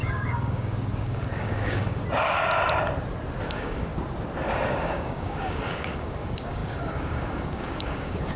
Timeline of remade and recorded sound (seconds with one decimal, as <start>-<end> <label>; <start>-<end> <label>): 0.0-2.0 remade; 2.0-3.5 recorded; 3.5-3.9 remade; 3.9-4.5 recorded; 4.5-8.4 remade